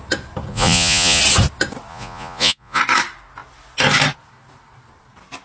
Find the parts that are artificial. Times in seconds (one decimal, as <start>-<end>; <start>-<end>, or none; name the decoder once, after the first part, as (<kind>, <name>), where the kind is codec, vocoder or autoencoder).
0.5-1.2 (vocoder, Vocos); 1.9-2.8